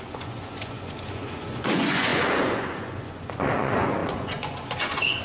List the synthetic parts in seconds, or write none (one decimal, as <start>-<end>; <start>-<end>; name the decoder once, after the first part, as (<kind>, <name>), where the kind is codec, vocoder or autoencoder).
0.0-5.2 (vocoder, Vocos)